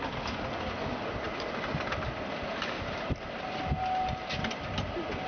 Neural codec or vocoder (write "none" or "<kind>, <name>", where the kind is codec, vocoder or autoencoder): none